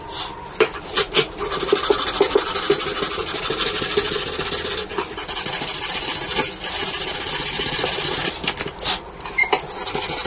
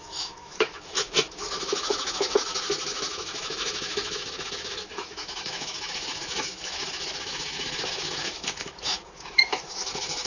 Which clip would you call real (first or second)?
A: first